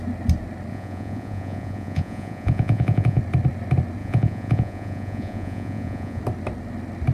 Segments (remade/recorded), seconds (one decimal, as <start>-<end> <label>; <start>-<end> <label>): 0.0-0.7 recorded; 0.7-3.2 remade; 3.2-4.0 recorded; 4.0-6.2 remade; 6.2-7.1 recorded